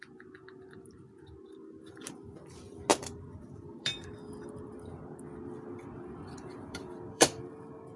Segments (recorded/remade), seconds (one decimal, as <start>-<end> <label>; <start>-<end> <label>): 0.0-2.9 recorded; 2.9-8.0 remade

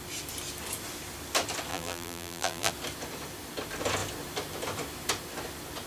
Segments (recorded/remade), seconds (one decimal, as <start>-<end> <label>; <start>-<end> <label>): 0.0-1.7 recorded; 1.7-2.7 remade; 2.7-5.9 recorded

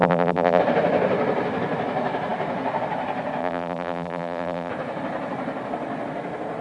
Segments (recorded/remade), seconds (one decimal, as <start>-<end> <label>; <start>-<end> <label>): 0.0-0.6 remade; 0.6-3.4 recorded; 3.4-4.7 remade; 4.7-6.6 recorded

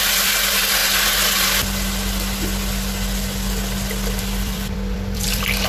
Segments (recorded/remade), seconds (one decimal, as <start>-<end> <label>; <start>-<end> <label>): 0.0-0.8 remade; 0.8-4.2 recorded; 4.2-5.7 remade

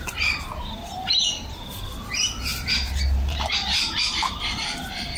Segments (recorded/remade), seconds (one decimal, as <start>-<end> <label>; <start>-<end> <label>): 0.0-2.5 recorded; 2.5-5.2 remade

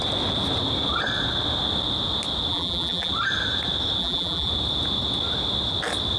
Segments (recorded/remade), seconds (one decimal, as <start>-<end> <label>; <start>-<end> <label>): 0.0-2.5 recorded; 2.5-3.1 remade; 3.1-4.0 recorded; 4.0-4.5 remade; 4.5-6.2 recorded

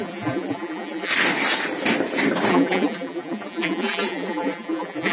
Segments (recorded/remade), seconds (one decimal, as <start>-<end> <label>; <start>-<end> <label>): 0.0-1.1 remade; 1.1-2.5 recorded; 2.5-5.1 remade